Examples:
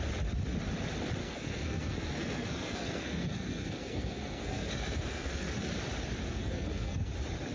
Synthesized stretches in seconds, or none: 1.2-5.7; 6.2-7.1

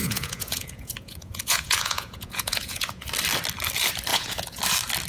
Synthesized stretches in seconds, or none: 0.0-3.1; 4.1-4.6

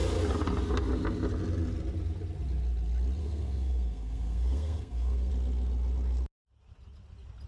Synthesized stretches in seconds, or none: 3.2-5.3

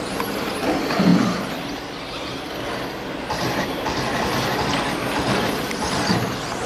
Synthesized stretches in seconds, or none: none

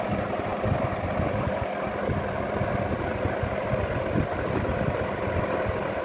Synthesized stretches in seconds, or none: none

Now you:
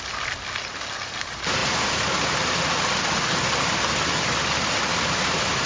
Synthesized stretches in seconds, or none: none

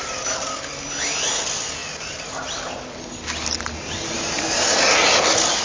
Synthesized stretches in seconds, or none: none

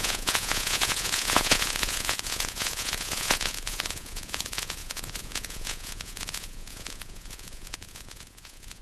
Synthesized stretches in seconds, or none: 0.0-8.8